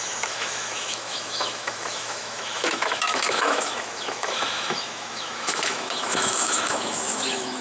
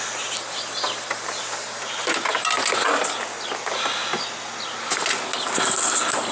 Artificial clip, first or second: first